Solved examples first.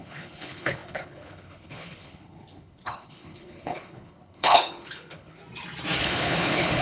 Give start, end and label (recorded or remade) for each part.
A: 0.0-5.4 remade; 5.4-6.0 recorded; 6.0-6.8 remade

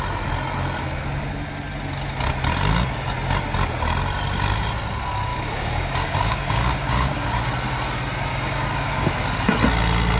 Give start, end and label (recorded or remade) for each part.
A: 0.0-5.3 recorded; 5.3-7.4 remade; 7.4-8.3 recorded; 8.3-9.1 remade; 9.1-10.2 recorded